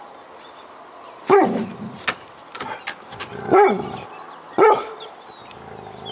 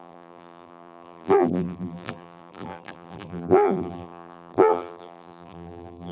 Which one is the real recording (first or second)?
first